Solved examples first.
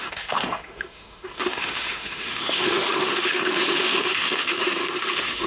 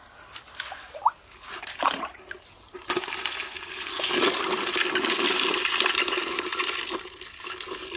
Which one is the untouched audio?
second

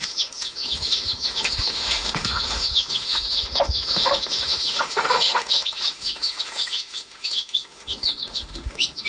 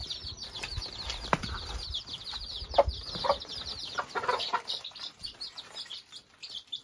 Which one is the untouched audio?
second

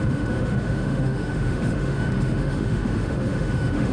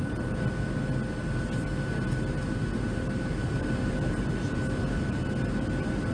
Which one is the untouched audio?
second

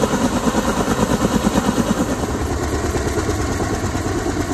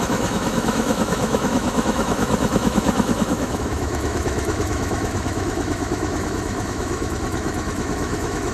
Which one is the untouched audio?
first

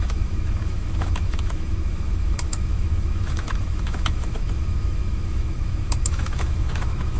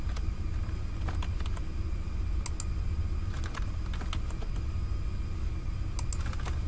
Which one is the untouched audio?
second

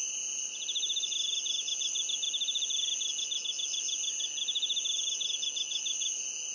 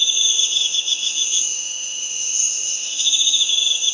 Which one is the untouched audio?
first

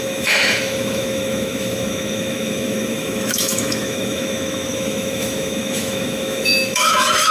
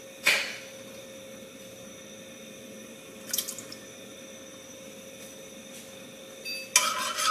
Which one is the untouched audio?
second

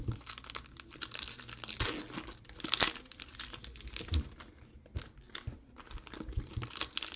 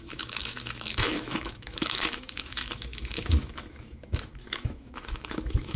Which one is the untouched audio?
first